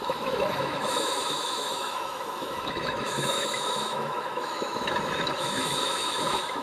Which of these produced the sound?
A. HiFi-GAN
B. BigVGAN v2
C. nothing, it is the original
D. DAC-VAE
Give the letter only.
D